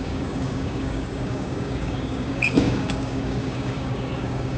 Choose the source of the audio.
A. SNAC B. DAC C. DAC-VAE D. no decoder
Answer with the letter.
B